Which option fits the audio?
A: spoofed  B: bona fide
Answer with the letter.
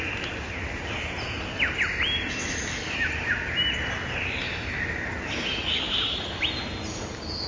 B